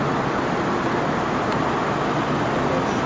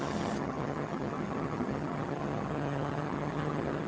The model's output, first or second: second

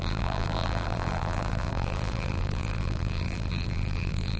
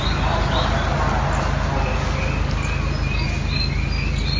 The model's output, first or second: first